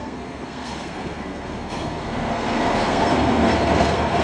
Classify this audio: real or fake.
fake